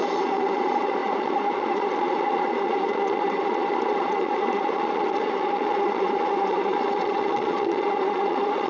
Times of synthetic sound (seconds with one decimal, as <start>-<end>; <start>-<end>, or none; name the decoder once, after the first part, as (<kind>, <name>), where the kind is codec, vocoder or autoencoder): 0.0-8.7 (vocoder, Vocos)